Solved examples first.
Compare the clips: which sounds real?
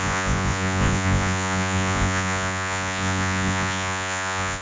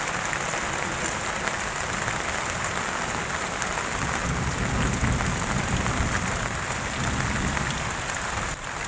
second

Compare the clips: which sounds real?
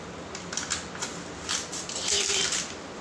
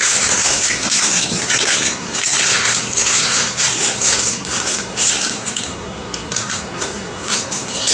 first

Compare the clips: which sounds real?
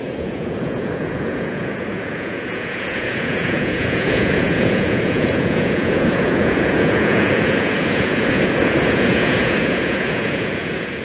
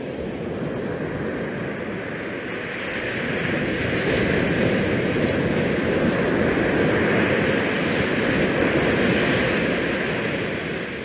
second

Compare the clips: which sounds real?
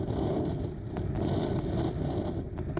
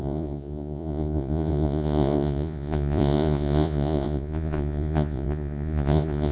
first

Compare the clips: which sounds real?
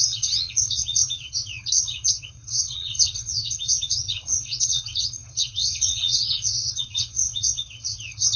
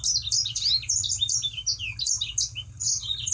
second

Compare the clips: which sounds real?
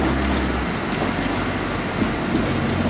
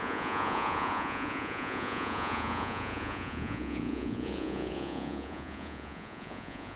first